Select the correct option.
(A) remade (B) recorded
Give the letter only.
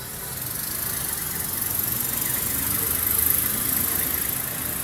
B